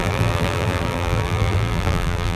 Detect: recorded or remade remade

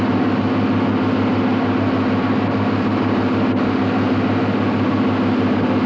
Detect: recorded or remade recorded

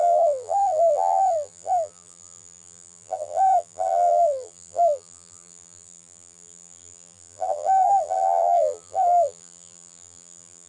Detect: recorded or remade remade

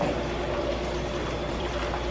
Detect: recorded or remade remade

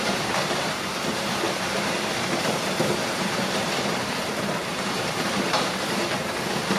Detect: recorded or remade remade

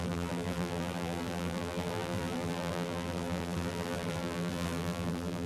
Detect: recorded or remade remade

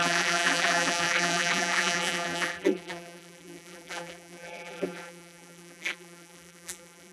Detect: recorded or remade remade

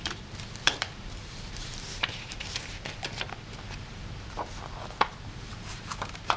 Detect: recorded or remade remade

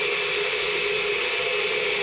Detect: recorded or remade recorded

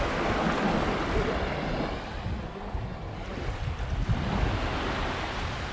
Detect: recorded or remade recorded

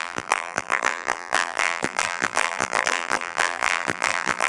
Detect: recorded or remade remade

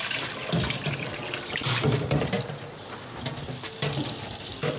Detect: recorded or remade remade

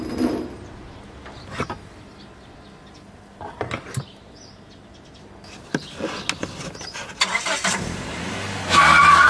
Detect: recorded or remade recorded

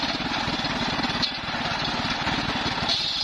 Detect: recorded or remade recorded